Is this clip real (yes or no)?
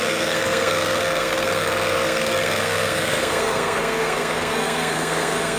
no